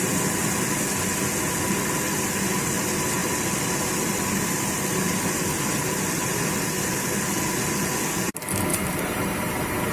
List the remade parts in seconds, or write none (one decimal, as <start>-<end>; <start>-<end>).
8.7-9.3